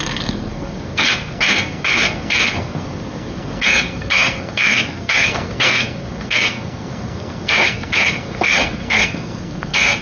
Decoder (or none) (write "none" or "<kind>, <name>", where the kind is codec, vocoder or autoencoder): codec, SNAC